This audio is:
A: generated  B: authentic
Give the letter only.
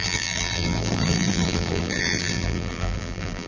A